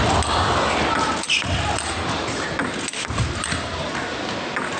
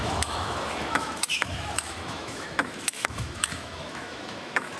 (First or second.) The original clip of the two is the first